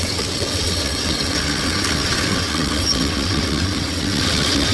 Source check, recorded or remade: remade